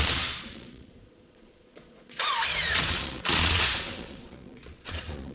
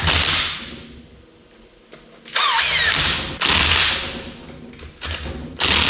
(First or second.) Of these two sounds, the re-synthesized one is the first